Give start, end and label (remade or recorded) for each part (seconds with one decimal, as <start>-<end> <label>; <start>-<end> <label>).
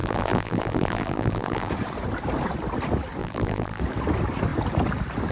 0.0-1.7 remade; 1.7-3.2 recorded; 3.2-3.8 remade; 3.8-5.3 recorded